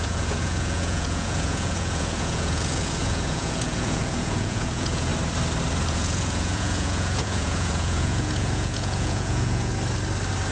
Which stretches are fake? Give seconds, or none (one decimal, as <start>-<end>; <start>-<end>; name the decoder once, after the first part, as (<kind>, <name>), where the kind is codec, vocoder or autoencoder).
0.0-5.1 (vocoder, Vocos); 5.9-9.7